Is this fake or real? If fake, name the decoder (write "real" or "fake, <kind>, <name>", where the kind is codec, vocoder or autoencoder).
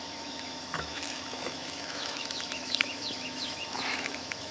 fake, autoencoder, DAC-VAE